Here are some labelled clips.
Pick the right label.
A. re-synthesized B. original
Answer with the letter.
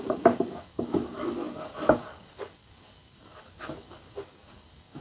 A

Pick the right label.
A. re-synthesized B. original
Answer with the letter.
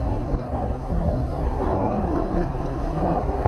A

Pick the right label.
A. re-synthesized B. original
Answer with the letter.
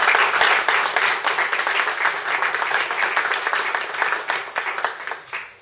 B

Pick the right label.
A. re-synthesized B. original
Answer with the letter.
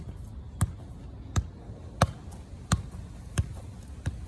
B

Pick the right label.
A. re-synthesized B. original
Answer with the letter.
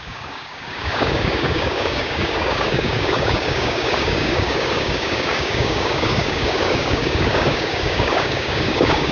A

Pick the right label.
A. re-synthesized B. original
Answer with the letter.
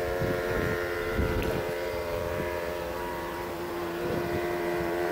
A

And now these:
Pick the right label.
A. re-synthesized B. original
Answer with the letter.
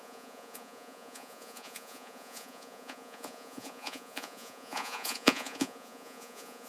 A